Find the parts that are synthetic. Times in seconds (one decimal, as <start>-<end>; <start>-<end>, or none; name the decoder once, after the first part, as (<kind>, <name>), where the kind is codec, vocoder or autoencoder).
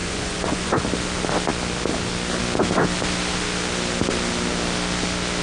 0.0-0.7 (vocoder, Vocos)